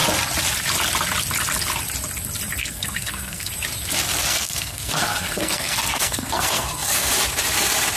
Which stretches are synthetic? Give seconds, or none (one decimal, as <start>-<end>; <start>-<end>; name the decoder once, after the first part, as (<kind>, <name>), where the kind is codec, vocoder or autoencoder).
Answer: 2.6-3.5 (codec, SNAC); 4.3-7.1